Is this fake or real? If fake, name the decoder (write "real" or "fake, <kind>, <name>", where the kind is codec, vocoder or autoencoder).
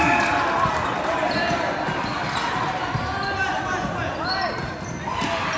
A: real